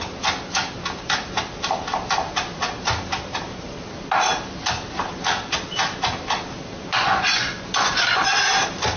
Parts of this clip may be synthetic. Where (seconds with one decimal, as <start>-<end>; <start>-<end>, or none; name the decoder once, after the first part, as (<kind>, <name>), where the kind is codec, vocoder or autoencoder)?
6.9-8.3 (vocoder, Vocos)